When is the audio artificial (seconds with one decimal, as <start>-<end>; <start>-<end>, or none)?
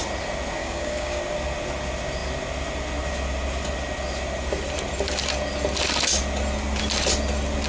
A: 0.6-1.2